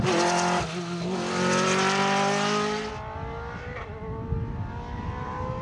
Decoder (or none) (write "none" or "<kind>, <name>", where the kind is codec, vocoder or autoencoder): none